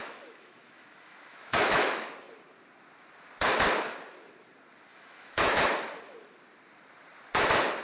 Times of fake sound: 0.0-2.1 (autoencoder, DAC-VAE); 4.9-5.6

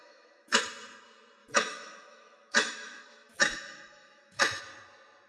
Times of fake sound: 0.0-0.6 (autoencoder, DAC-VAE); 1.4-4.6